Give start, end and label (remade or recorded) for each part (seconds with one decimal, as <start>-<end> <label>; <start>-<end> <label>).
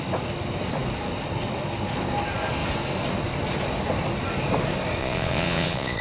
0.0-5.0 recorded; 5.0-6.0 remade